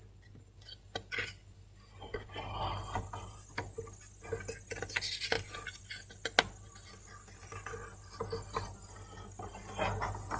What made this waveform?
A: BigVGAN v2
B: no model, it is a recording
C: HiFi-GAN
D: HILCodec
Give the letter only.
B